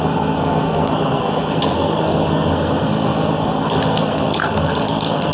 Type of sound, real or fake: fake